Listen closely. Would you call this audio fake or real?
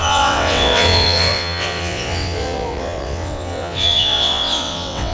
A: fake